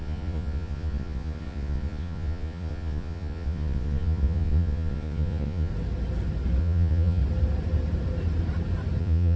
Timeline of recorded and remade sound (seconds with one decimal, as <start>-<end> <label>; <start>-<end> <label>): 0.0-5.7 remade; 5.7-6.6 recorded; 6.6-7.2 remade; 7.2-9.0 recorded; 9.0-9.4 remade